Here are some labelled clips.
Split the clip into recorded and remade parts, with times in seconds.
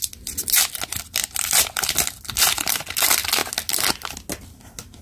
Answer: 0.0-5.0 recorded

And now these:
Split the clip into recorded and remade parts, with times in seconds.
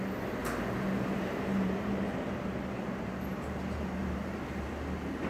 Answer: 0.0-0.4 recorded; 0.4-3.6 remade; 3.6-4.0 recorded; 4.0-4.7 remade; 4.7-5.3 recorded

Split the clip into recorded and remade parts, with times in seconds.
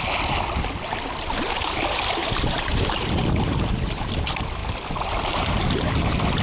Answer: 0.0-2.2 recorded; 2.2-4.1 remade; 4.1-6.4 recorded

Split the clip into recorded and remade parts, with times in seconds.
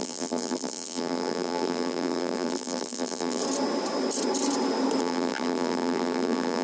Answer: 0.0-3.4 remade; 3.4-5.0 recorded; 5.0-6.6 remade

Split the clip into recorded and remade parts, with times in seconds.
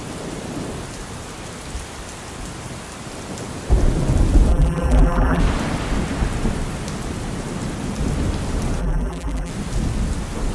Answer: 0.0-4.5 recorded; 4.5-5.4 remade; 5.4-8.8 recorded; 8.8-9.5 remade; 9.5-10.5 recorded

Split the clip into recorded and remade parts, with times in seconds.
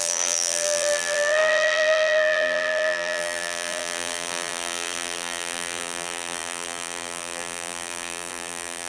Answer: 0.0-8.9 remade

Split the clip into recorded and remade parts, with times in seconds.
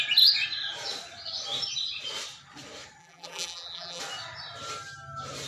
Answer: 0.0-3.0 recorded; 3.0-4.0 remade; 4.0-5.5 recorded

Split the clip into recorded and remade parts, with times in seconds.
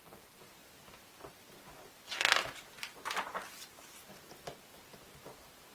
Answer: 0.0-0.6 remade; 0.6-3.5 recorded; 3.5-4.1 remade; 4.1-5.1 recorded; 5.1-5.7 remade